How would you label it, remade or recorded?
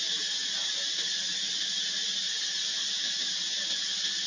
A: recorded